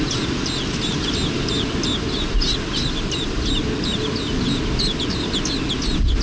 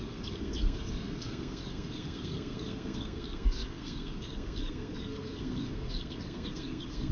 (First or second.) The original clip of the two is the first